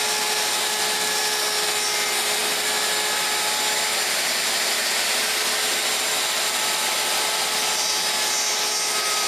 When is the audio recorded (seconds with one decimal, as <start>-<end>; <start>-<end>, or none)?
0.0-9.3

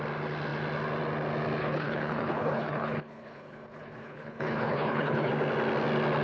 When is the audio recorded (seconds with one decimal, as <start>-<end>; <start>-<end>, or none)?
0.0-1.6; 5.3-6.2

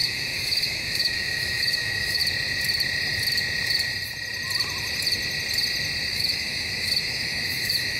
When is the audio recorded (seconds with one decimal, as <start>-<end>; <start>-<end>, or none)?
2.2-6.1

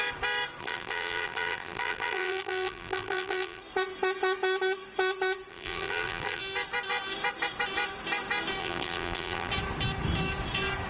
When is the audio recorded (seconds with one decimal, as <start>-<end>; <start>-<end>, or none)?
0.0-0.6; 3.6-5.5; 6.4-8.6; 9.5-10.9

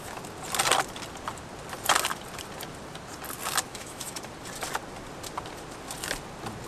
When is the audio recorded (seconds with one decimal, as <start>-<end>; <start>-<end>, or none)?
0.0-3.7; 4.2-6.7